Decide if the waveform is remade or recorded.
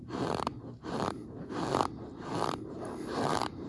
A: remade